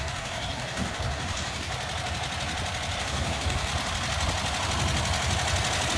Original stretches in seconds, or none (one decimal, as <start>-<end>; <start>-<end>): 1.7-3.0; 3.7-6.0